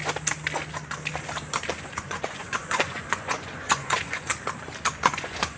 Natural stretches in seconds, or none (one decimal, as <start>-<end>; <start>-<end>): 0.0-1.8; 4.3-5.0